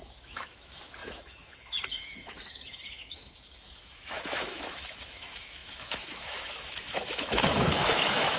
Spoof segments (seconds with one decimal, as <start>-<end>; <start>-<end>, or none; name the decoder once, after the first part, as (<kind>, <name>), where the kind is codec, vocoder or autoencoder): 0.0-8.4 (autoencoder, DAC-VAE)